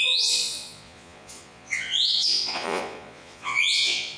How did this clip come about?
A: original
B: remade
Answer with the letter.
B